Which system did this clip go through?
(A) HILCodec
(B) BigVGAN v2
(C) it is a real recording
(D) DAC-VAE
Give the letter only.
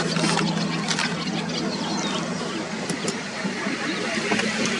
C